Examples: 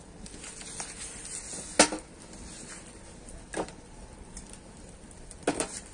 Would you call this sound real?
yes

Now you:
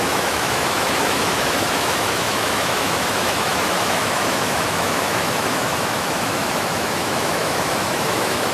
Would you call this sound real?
no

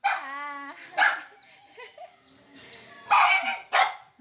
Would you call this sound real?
yes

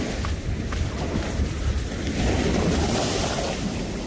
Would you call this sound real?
yes